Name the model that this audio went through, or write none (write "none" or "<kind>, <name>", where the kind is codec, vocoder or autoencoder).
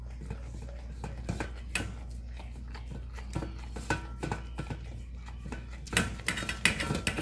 none